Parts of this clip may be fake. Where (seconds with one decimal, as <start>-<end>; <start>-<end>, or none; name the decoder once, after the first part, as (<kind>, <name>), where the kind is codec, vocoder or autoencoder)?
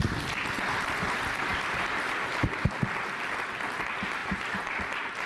4.2-5.3 (vocoder, BigVGAN v2)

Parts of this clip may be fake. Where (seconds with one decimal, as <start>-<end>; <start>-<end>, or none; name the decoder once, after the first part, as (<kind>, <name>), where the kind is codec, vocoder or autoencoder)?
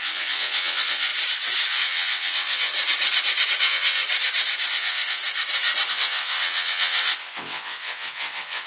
0.0-1.1 (vocoder, WaveNeXt); 1.7-2.7; 3.6-4.0; 4.7-5.2; 5.9-8.7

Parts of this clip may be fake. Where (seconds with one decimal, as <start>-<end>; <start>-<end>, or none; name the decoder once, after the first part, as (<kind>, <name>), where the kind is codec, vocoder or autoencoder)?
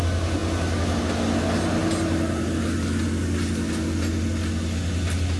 none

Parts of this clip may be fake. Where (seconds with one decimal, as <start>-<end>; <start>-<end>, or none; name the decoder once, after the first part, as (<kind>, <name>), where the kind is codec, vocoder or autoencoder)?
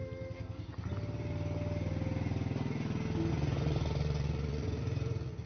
3.3-5.5 (vocoder, Vocos)